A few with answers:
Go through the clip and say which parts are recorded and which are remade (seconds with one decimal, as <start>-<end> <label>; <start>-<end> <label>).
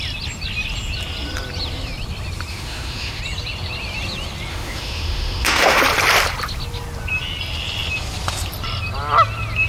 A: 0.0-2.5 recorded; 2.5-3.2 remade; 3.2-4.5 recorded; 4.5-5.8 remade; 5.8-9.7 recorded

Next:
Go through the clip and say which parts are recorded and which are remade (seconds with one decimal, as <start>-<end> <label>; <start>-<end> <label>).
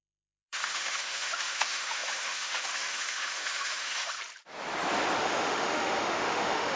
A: 0.0-4.2 remade; 4.2-5.2 recorded; 5.2-6.8 remade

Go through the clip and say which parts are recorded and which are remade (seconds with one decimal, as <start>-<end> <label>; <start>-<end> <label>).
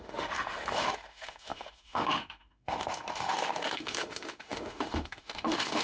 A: 0.0-5.8 remade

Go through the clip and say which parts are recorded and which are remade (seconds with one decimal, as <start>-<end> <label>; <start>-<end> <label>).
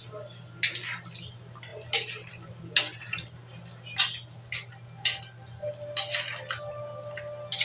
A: 0.0-7.6 recorded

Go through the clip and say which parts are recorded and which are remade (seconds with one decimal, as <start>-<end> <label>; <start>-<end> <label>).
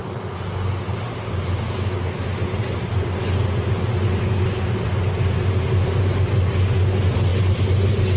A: 0.0-8.2 recorded